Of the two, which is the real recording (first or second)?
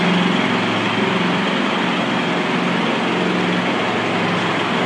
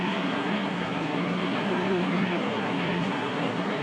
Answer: first